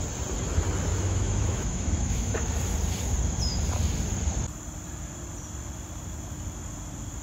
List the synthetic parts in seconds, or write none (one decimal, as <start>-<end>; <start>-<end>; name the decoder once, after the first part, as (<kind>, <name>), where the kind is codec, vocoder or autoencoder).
0.9-2.5 (autoencoder, DAC-VAE)